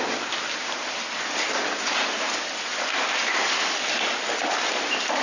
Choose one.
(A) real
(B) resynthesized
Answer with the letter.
A